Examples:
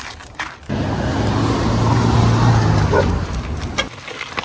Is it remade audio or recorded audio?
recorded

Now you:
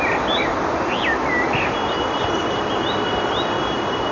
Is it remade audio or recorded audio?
recorded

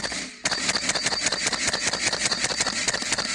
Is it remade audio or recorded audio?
recorded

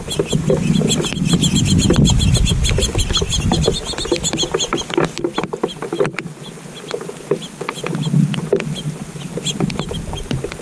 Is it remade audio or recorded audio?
recorded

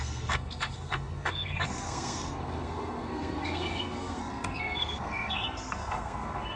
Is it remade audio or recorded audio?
remade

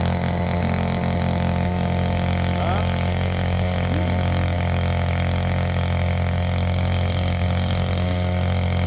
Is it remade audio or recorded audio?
recorded